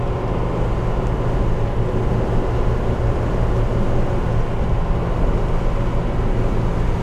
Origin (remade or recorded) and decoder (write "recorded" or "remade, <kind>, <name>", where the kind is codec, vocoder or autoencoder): recorded